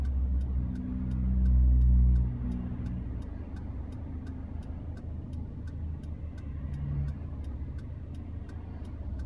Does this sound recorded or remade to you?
recorded